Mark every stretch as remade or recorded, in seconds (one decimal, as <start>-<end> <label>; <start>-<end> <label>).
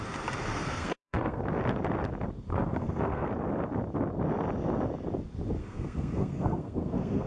0.0-0.5 recorded; 0.5-1.4 remade; 1.4-2.5 recorded; 2.5-3.3 remade; 3.3-5.6 recorded; 5.6-7.3 remade